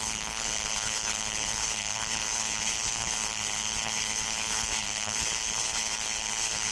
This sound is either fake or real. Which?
fake